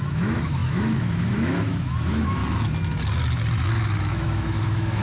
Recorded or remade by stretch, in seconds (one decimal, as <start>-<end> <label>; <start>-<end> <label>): 0.0-2.4 remade; 2.4-3.7 recorded; 3.7-5.0 remade